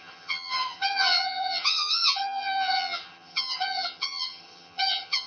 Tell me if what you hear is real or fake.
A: fake